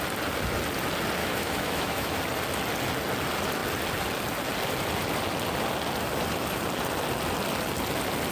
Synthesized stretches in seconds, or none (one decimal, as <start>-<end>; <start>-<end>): 1.2-2.2